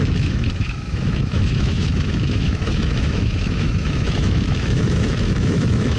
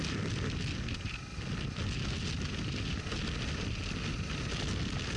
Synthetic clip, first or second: first